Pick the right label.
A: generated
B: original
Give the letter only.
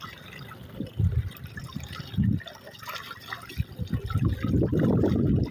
B